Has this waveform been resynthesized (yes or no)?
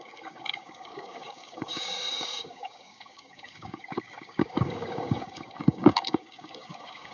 yes